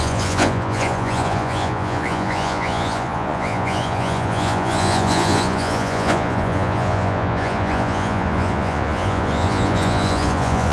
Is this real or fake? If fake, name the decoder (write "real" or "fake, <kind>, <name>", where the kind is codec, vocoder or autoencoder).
fake, vocoder, Vocos